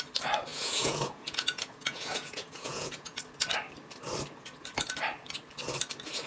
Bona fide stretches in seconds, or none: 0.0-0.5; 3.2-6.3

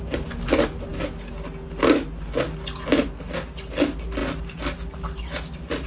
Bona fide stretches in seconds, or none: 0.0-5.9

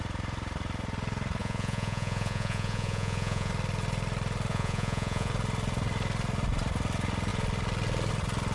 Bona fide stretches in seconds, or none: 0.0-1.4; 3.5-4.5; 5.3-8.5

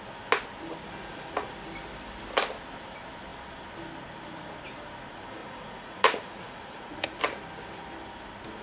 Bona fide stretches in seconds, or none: 0.0-1.0; 1.5-5.4; 7.2-8.6